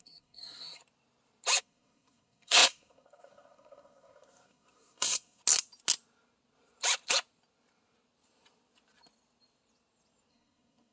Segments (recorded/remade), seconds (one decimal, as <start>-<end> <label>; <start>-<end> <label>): 0.0-0.8 remade; 0.8-1.6 recorded; 1.6-5.4 remade; 5.4-10.3 recorded; 10.3-10.9 remade